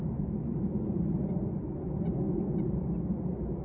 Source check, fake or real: real